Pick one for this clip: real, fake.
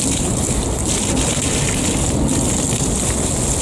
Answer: real